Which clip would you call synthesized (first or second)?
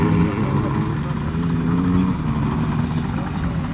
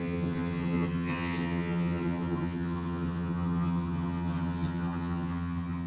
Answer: second